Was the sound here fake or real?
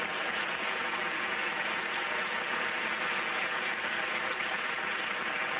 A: real